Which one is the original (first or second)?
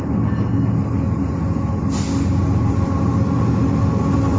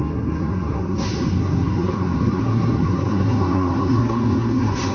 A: first